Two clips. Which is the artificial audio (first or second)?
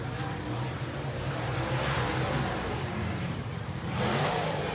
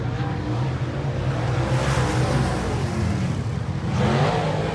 first